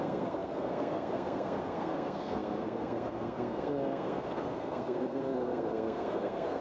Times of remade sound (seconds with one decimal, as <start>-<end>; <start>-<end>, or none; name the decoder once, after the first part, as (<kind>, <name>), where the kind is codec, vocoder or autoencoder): 0.0-6.6 (codec, SNAC)